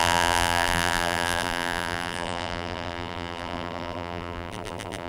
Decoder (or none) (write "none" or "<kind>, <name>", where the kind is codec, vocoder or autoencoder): vocoder, BigVGAN v2